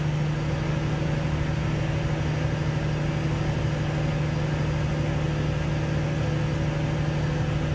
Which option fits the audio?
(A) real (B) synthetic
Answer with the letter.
A